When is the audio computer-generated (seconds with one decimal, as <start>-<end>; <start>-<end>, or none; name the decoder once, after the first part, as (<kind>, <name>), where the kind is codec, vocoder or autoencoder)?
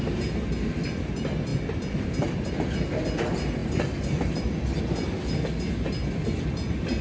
1.5-2.5 (vocoder, BigVGAN v2); 3.6-4.8